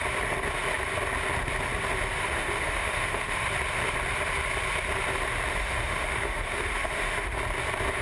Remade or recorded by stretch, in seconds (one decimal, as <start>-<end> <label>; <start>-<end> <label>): 0.0-2.2 recorded; 2.2-3.5 remade; 3.5-5.6 recorded; 5.6-7.4 remade; 7.4-8.0 recorded